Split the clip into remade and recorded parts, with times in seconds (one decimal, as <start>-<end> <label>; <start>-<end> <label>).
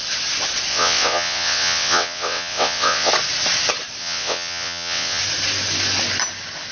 0.0-0.7 recorded; 0.7-3.1 remade; 3.1-4.0 recorded; 4.0-5.2 remade; 5.2-6.7 recorded